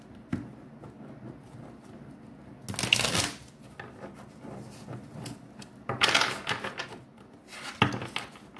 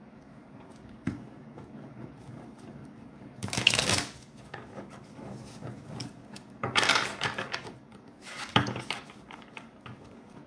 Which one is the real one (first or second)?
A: first